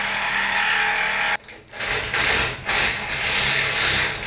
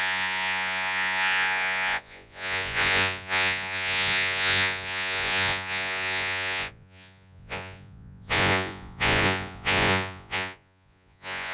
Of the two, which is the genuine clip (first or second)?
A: first